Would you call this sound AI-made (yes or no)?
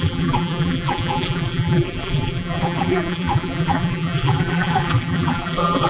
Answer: yes